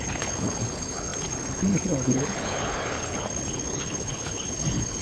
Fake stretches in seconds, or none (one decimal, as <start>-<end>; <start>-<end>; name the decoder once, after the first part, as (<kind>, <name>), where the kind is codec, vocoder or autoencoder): 0.0-5.0 (codec, HILCodec)